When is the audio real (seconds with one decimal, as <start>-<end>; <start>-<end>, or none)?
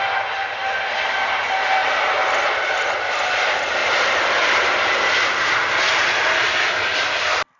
0.0-7.6